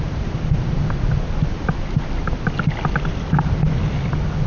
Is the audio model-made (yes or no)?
no